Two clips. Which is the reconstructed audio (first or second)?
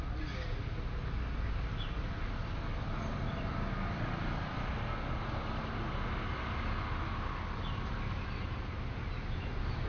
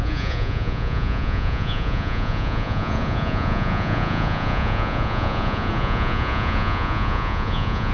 second